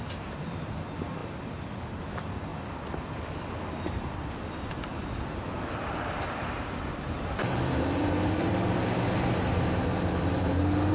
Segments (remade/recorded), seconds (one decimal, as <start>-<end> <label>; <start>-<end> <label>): 0.0-4.9 recorded; 4.9-8.8 remade; 8.8-10.9 recorded